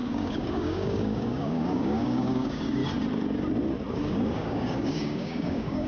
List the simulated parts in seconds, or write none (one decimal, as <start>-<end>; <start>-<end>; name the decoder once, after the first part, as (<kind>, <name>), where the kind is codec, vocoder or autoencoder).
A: 0.0-2.8 (codec, DAC); 3.9-5.9